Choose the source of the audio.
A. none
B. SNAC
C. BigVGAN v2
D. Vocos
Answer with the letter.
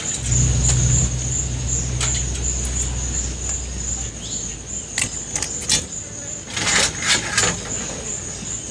A